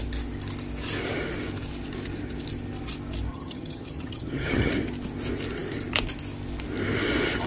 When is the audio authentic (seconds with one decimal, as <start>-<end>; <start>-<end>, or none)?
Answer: 0.0-3.3; 4.7-7.5